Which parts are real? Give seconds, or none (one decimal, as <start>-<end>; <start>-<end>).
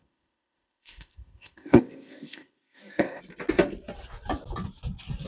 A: 3.2-5.3